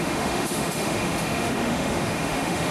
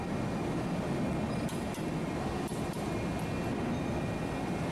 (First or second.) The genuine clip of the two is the second